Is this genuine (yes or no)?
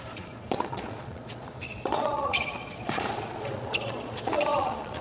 no